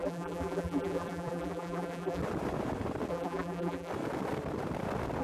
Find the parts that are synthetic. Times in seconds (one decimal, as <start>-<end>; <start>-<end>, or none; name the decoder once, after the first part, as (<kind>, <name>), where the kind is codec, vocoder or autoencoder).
0.0-2.2 (vocoder, BigVGAN v2); 3.1-3.9